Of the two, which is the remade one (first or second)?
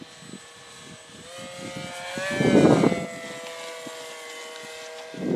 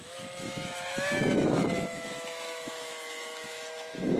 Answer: second